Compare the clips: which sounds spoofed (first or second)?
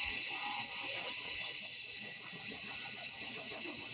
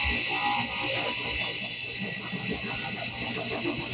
first